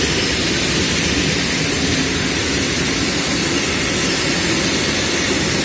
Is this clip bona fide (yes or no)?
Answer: yes